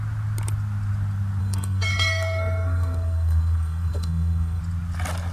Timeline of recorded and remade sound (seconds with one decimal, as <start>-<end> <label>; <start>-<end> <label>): 0.0-1.4 recorded; 1.4-4.6 remade; 4.6-5.3 recorded